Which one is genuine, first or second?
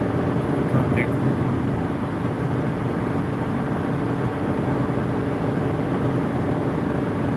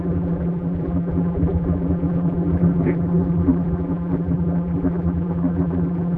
first